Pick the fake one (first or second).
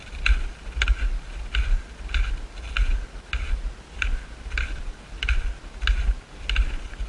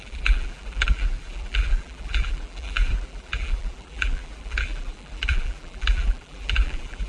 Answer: second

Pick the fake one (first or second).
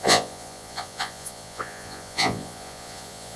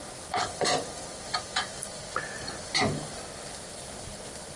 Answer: first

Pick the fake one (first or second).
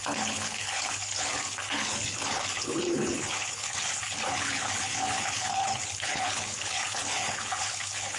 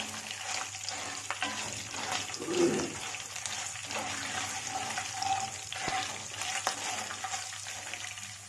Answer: first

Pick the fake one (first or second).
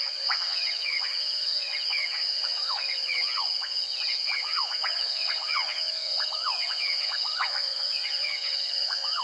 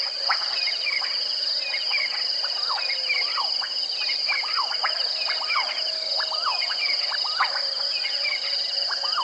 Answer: first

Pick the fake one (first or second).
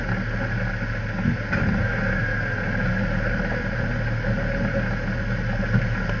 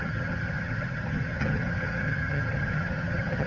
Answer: second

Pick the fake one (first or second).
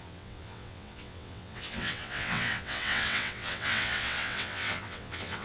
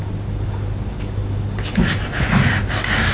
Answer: first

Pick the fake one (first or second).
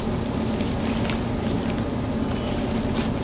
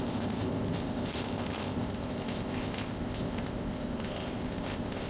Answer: second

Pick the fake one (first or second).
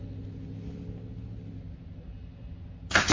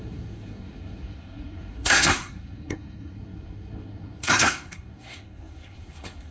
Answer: second